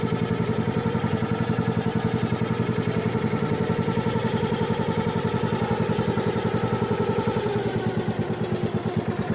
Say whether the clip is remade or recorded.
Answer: recorded